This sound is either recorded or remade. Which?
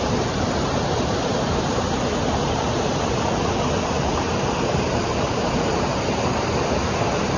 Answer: recorded